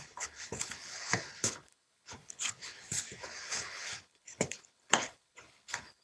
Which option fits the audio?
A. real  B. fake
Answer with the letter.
B